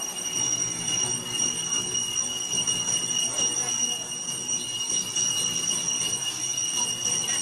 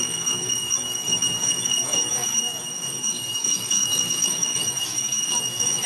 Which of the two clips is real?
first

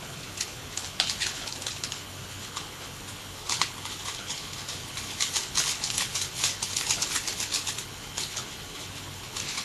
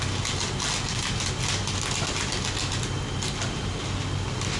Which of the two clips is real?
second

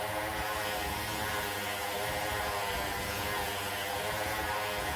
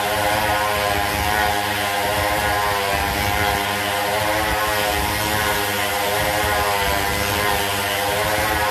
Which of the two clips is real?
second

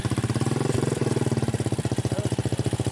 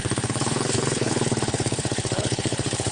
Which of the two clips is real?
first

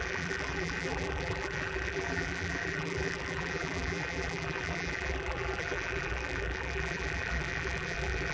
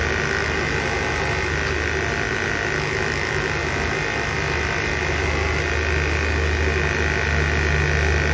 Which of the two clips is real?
second